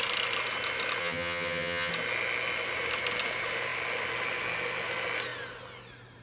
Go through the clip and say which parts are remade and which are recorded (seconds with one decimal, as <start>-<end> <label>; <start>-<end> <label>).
0.0-1.0 recorded; 1.0-1.9 remade; 1.9-6.2 recorded